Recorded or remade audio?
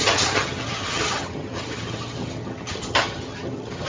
remade